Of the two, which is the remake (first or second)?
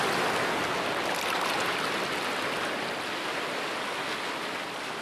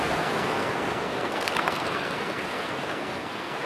second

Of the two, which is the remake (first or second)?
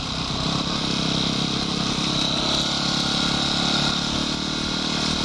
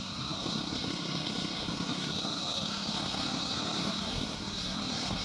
second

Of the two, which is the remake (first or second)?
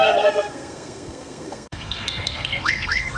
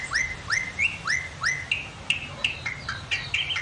first